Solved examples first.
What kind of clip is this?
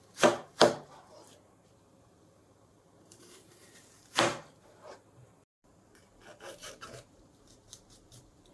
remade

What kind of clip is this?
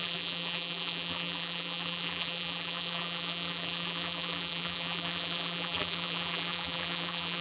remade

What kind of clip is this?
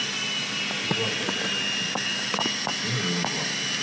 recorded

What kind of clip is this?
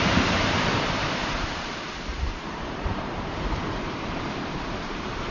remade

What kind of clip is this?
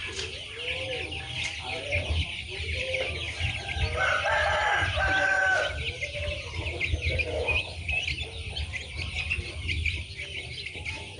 recorded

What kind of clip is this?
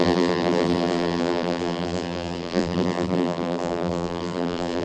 remade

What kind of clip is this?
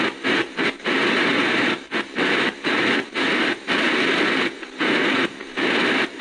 remade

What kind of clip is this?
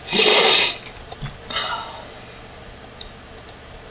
recorded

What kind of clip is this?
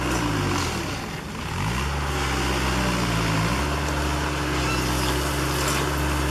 recorded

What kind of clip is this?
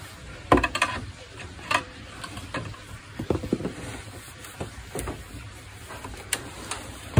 remade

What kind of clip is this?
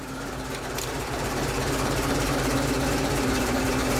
remade